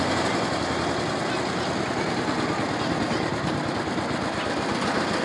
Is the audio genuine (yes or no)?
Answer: yes